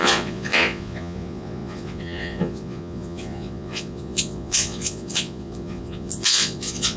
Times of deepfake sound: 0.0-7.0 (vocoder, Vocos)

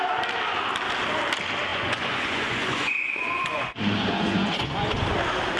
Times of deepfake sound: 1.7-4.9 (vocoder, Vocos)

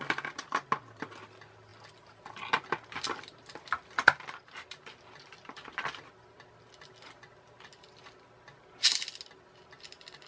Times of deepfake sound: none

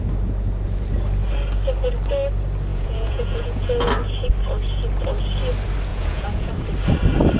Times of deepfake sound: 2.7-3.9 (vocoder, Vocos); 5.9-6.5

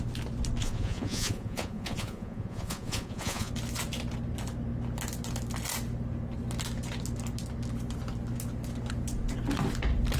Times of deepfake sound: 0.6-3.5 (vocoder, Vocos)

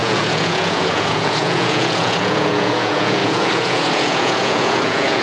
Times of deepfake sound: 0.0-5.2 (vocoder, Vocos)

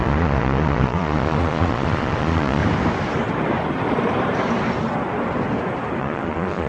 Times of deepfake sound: 0.0-2.6 (vocoder, Vocos); 6.0-6.7